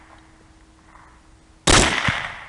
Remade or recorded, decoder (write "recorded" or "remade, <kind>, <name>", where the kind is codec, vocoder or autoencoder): recorded